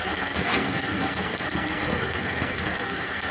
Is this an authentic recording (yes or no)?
no